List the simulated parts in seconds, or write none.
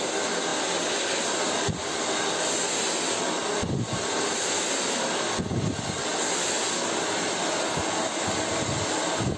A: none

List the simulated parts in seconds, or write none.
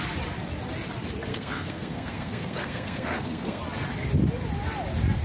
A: 1.3-3.6 (codec, SNAC)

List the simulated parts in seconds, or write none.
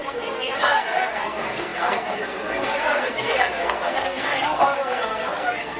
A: 0.0-5.8 (codec, SNAC)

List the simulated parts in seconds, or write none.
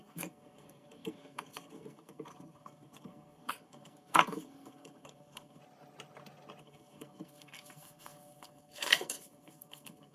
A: 0.0-5.6 (codec, SNAC); 6.6-10.1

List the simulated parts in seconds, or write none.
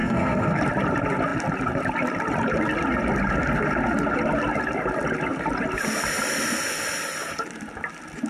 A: 0.0-0.6 (codec, SNAC)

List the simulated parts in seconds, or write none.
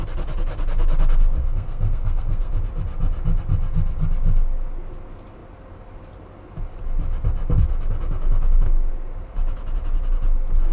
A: 1.4-2.5 (codec, SNAC)